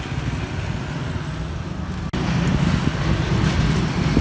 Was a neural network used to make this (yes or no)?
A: no